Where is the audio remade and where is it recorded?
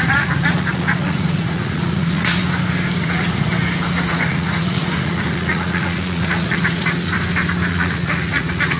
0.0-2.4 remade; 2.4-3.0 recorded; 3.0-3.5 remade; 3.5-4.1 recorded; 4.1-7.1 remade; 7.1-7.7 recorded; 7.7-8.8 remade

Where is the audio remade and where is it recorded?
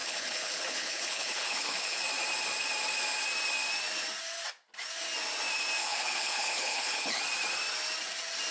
0.0-2.0 remade; 2.0-5.8 recorded; 5.8-7.2 remade; 7.2-8.5 recorded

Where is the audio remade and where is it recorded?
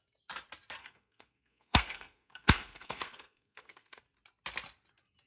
0.0-0.8 recorded; 0.8-4.0 remade; 4.0-5.3 recorded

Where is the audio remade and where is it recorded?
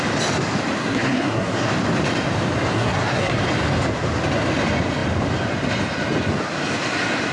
0.0-0.8 recorded; 0.8-1.7 remade; 1.7-2.7 recorded; 2.7-3.4 remade; 3.4-7.3 recorded